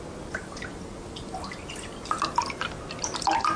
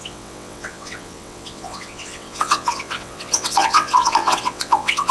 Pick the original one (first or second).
first